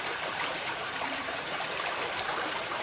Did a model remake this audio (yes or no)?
yes